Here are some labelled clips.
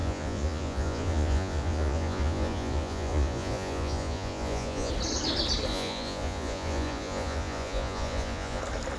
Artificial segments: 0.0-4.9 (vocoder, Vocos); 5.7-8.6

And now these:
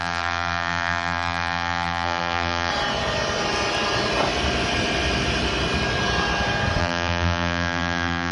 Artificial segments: 0.0-2.7 (vocoder, BigVGAN v2); 6.8-8.3

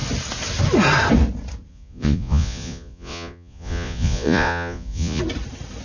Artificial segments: 1.7-5.2 (vocoder, Vocos)

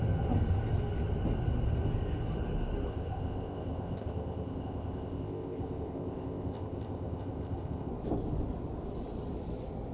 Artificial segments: 2.9-7.9 (codec, ZipCodec)

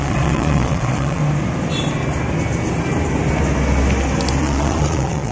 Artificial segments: 0.0-1.2 (vocoder, Vocos); 4.4-5.3